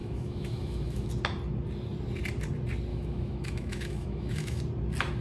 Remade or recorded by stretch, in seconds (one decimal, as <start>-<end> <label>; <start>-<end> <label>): 0.0-1.1 remade; 1.1-2.9 recorded; 2.9-4.6 remade; 4.6-5.2 recorded